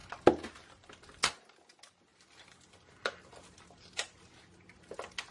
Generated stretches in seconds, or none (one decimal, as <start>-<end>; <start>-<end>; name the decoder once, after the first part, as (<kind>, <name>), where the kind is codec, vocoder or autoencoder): none